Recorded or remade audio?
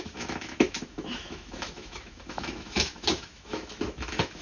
remade